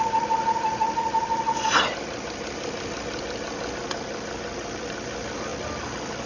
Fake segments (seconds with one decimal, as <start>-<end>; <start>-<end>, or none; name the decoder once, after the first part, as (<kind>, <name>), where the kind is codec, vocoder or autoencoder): none